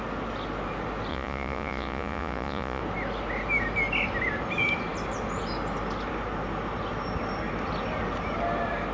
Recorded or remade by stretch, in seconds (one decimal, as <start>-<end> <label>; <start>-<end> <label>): 0.0-1.1 recorded; 1.1-2.8 remade; 2.8-8.9 recorded

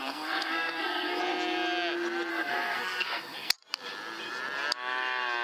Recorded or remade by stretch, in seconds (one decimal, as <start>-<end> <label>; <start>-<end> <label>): 0.0-1.2 remade; 1.2-2.3 recorded; 2.3-3.5 remade; 3.5-5.4 recorded

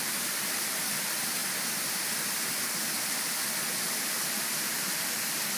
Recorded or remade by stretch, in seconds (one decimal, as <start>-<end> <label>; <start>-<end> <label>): 0.0-5.6 remade

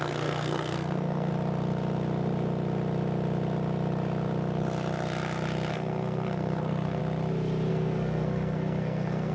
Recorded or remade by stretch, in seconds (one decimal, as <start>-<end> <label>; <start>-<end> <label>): 0.0-1.3 remade; 1.3-5.7 recorded; 5.7-7.0 remade; 7.0-7.7 recorded; 7.7-9.3 remade

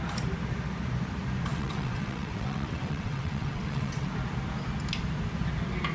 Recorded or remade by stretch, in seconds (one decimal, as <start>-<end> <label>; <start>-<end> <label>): 0.0-1.5 recorded; 1.5-4.1 remade; 4.1-5.9 recorded